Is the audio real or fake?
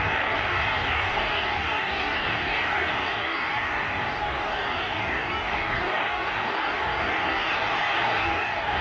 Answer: fake